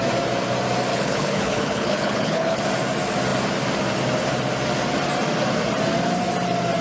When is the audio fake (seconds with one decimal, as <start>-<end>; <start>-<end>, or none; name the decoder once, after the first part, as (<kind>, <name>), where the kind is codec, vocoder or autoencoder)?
0.9-2.6 (codec, HILCodec)